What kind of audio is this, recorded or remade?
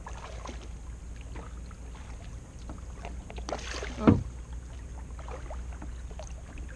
recorded